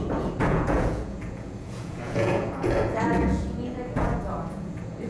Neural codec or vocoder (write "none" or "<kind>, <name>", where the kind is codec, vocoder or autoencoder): vocoder, Vocos